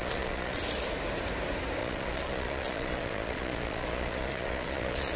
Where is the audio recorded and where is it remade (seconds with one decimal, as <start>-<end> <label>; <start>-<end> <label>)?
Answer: 0.0-0.6 remade; 0.6-1.8 recorded; 1.8-5.2 remade